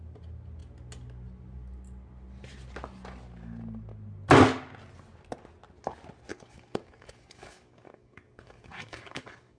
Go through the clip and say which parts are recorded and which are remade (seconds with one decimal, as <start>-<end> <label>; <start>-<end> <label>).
0.0-6.3 recorded; 6.3-9.6 remade